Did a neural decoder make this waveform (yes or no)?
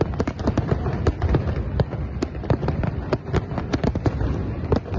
no